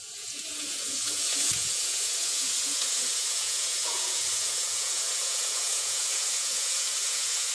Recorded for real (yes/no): no